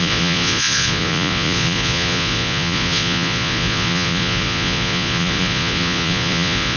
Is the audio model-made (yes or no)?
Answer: yes